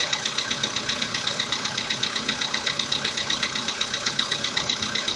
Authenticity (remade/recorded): remade